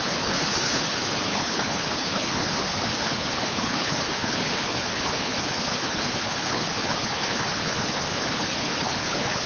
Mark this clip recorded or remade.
remade